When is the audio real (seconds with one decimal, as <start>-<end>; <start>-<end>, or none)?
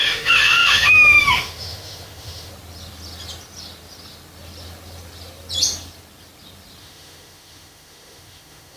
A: 2.5-6.8